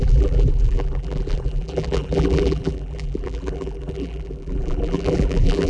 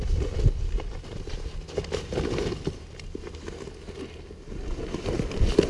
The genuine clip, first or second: second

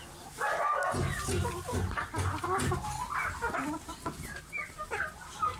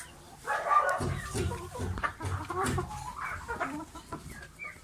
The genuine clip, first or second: first